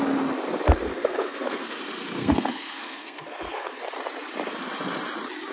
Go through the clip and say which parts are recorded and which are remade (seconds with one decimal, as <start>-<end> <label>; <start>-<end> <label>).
0.0-0.9 recorded; 0.9-1.8 remade; 1.8-2.2 recorded; 2.2-3.8 remade; 3.8-5.5 recorded